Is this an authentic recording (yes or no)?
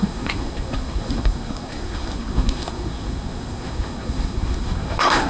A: no